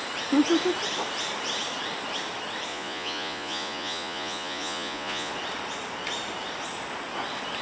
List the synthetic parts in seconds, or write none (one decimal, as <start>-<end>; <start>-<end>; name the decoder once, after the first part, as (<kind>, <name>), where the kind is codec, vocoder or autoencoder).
2.7-5.3 (vocoder, Vocos)